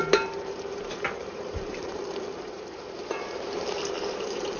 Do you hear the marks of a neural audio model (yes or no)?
yes